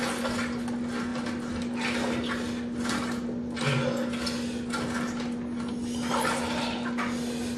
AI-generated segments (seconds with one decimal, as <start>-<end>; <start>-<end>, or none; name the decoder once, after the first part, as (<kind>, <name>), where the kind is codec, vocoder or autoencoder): none